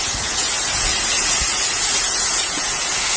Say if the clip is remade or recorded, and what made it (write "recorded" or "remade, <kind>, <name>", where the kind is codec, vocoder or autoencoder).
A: remade, vocoder, Vocos